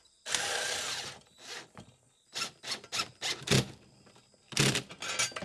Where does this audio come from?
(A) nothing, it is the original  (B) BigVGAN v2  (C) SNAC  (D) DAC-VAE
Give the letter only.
A